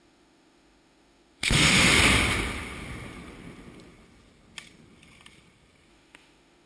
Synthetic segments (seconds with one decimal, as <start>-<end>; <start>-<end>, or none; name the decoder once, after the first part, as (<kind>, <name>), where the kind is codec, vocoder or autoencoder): 0.0-1.9 (autoencoder, DAC-VAE); 5.9-6.7